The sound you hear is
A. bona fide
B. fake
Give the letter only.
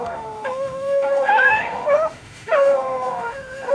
B